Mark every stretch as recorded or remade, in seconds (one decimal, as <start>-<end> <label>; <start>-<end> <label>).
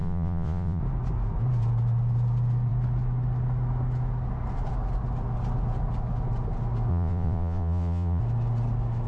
0.0-0.8 remade; 0.8-6.9 recorded; 6.9-8.2 remade; 8.2-9.1 recorded